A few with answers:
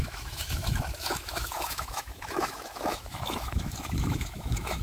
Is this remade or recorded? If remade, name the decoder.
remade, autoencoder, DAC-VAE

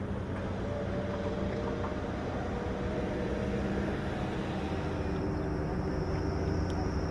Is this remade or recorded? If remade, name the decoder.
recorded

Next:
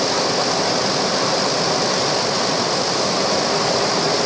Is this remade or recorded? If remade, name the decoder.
recorded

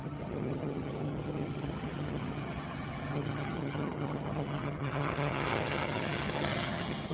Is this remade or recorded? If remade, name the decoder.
remade, vocoder, HiFi-GAN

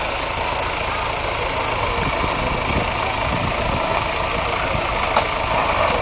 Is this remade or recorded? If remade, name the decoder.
recorded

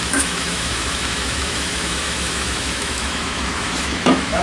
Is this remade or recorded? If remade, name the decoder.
remade, autoencoder, DAC-VAE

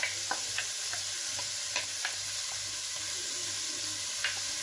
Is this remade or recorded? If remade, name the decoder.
recorded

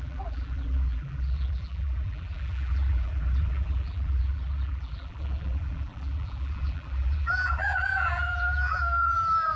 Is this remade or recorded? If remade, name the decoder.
remade, vocoder, BigVGAN v2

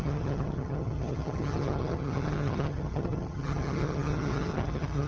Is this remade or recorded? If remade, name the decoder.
remade, vocoder, HiFi-GAN